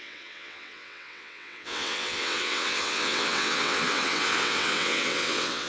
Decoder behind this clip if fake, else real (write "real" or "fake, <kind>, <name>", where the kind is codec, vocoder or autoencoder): fake, vocoder, WaveNeXt